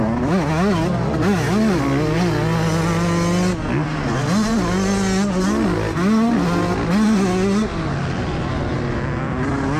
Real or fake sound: real